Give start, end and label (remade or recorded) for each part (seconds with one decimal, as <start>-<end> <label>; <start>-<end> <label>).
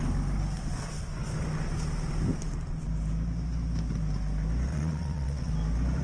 0.0-4.7 recorded; 4.7-5.5 remade; 5.5-6.0 recorded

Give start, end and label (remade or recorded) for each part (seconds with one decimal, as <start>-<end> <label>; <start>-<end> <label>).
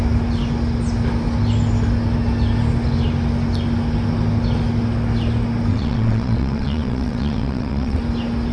0.0-5.7 recorded; 5.7-8.0 remade; 8.0-8.5 recorded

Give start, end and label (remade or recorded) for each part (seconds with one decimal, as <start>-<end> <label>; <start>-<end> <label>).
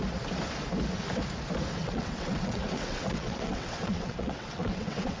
0.0-1.8 recorded; 1.8-5.2 remade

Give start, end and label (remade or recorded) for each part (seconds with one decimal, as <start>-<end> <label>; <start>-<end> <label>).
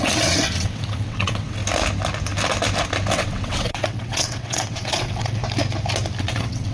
0.0-1.6 remade; 1.6-3.1 recorded; 3.1-5.4 remade; 5.4-6.2 recorded; 6.2-6.7 remade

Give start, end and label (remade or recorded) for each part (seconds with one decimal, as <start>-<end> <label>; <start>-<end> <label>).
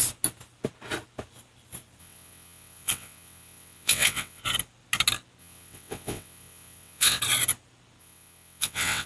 0.0-2.0 recorded; 2.0-4.4 remade; 4.4-5.4 recorded; 5.4-7.2 remade; 7.2-8.0 recorded; 8.0-9.1 remade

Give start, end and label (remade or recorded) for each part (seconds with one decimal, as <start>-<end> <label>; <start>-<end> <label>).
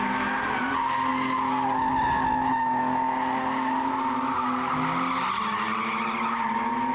0.0-6.9 recorded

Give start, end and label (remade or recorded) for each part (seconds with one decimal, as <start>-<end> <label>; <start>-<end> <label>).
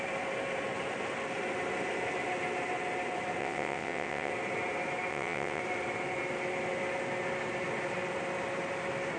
0.0-3.4 recorded; 3.4-4.3 remade; 4.3-5.1 recorded; 5.1-5.6 remade; 5.6-9.2 recorded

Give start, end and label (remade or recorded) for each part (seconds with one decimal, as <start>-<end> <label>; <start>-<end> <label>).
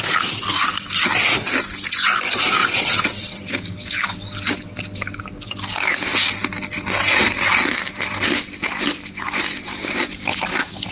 0.0-2.6 recorded; 2.6-3.4 remade; 3.4-10.9 recorded